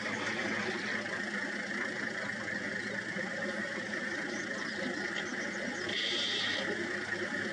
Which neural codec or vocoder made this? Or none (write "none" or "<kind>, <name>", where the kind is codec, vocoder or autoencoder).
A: none